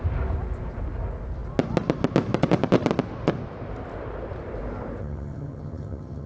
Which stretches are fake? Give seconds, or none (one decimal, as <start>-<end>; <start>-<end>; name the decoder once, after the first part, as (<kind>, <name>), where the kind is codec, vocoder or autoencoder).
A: 5.0-6.3 (vocoder, HiFi-GAN)